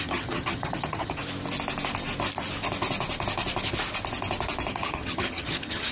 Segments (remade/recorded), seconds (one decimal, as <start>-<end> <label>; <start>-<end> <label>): 0.0-1.2 remade; 1.2-4.7 recorded; 4.7-5.9 remade